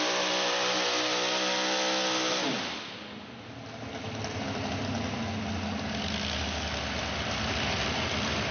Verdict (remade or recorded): recorded